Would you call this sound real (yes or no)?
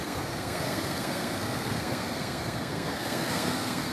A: no